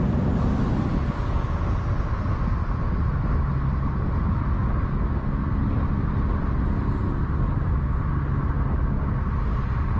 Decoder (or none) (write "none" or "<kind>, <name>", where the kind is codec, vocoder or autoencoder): none